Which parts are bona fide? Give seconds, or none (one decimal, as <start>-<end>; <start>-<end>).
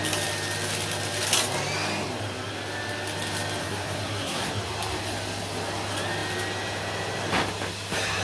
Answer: 0.0-3.6; 4.5-8.2